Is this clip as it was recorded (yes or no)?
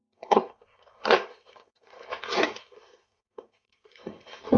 no